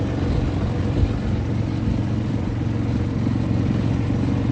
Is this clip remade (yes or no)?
no